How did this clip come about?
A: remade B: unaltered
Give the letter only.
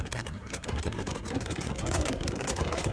A